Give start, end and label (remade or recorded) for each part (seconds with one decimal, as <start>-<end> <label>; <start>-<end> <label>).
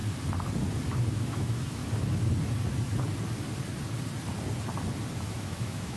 0.0-1.1 recorded; 1.1-1.8 remade; 1.8-5.1 recorded; 5.1-6.0 remade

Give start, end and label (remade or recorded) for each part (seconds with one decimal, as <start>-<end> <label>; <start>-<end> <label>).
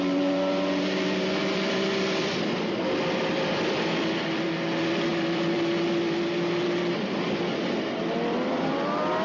0.0-9.2 remade